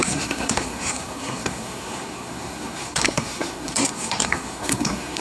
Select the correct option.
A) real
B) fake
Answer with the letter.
B